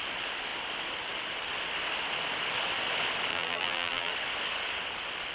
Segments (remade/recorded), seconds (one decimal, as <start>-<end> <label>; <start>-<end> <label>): 0.0-3.3 recorded; 3.3-4.1 remade; 4.1-5.3 recorded